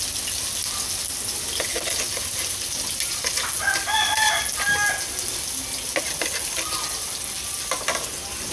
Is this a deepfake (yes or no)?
no